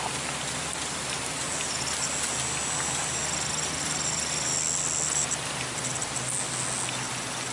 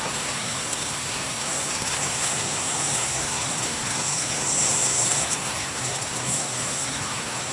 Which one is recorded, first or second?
first